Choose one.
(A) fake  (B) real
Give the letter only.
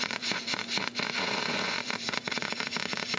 A